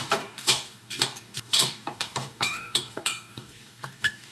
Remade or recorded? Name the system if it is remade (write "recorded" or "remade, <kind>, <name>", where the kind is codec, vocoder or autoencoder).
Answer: remade, codec, DAC